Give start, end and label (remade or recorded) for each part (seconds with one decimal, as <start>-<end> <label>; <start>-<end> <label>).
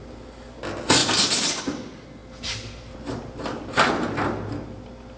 0.0-5.2 recorded